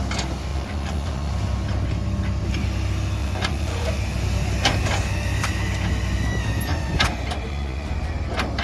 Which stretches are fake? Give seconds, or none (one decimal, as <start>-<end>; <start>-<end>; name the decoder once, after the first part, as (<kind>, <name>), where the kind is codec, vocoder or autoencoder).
0.5-1.3 (vocoder, Vocos); 3.2-4.0; 6.7-7.9